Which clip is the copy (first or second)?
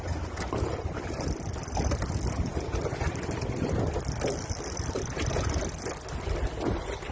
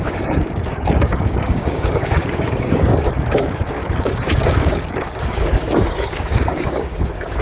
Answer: second